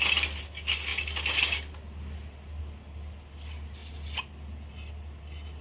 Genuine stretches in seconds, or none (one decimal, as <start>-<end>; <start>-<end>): 0.0-5.6